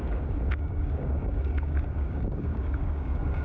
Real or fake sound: fake